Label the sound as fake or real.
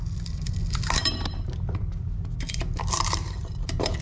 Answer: fake